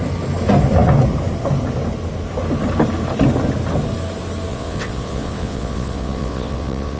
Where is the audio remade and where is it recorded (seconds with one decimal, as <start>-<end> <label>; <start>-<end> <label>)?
0.0-4.5 recorded; 4.5-7.0 remade